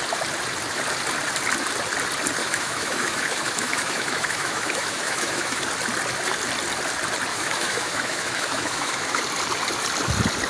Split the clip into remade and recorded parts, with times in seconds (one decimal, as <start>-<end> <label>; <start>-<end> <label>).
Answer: 0.0-2.4 recorded; 2.4-5.6 remade; 5.6-7.3 recorded; 7.3-9.2 remade; 9.2-10.5 recorded

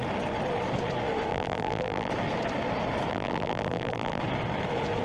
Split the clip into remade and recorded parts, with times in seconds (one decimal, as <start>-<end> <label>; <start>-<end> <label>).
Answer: 0.0-1.3 recorded; 1.3-2.1 remade; 2.1-3.1 recorded; 3.1-4.2 remade; 4.2-5.0 recorded

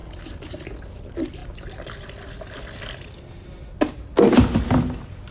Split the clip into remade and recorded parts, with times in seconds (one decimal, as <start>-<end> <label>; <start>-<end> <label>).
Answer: 0.0-5.3 recorded

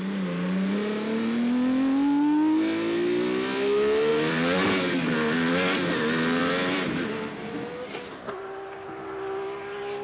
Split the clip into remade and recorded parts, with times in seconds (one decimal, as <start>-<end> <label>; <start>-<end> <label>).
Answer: 0.0-4.1 recorded; 4.1-6.9 remade; 6.9-10.0 recorded

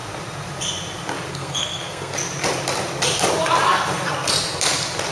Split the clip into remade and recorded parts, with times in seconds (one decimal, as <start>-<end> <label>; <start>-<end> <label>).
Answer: 0.0-1.3 recorded; 1.3-2.1 remade; 2.1-5.1 recorded

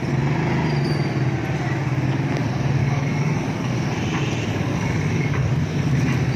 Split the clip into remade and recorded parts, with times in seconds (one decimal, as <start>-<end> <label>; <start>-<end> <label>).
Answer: 0.0-2.8 recorded; 2.8-3.7 remade; 3.7-4.5 recorded; 4.5-6.0 remade; 6.0-6.4 recorded

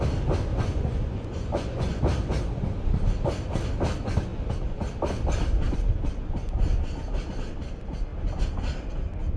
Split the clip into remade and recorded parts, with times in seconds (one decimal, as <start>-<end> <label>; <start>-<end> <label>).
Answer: 0.0-0.5 recorded; 0.5-2.0 remade; 2.0-9.4 recorded

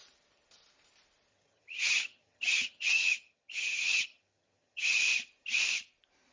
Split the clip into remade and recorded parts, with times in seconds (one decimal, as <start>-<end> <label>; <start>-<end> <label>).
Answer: 0.0-1.3 recorded; 1.3-5.0 remade; 5.0-6.3 recorded